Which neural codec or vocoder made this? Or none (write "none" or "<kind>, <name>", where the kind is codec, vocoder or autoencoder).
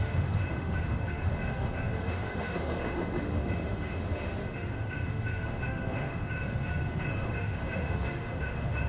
autoencoder, DAC-VAE